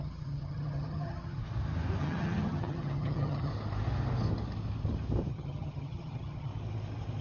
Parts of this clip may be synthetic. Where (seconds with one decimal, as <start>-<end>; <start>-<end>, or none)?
0.0-1.4; 2.0-3.5; 5.3-6.5